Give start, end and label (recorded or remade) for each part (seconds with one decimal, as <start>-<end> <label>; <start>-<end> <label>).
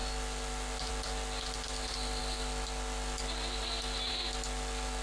0.0-5.0 recorded